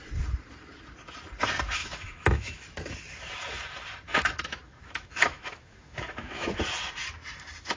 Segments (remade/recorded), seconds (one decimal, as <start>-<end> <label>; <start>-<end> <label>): 0.0-1.8 recorded; 1.8-2.6 remade; 2.6-4.1 recorded; 4.1-6.6 remade; 6.6-7.8 recorded